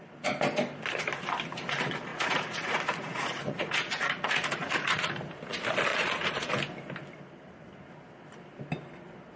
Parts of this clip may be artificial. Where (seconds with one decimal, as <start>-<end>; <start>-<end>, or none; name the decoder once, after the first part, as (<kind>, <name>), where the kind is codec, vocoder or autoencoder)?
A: 2.1-5.1 (vocoder, Vocos); 5.9-6.5